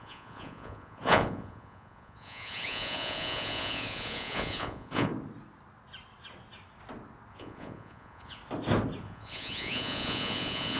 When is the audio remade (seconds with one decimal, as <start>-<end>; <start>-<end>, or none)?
0.0-5.1; 7.3-8.4; 9.0-10.8